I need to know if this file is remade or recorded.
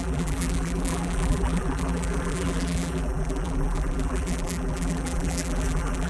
remade